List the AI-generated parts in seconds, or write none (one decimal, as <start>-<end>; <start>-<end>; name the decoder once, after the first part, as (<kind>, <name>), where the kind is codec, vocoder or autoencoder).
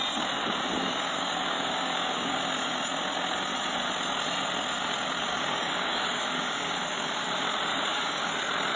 0.8-2.4 (codec, DAC); 5.3-7.1; 7.7-8.4